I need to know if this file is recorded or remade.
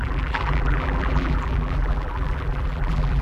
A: remade